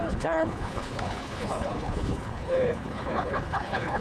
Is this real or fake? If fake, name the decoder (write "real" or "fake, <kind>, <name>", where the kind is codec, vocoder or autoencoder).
fake, codec, HILCodec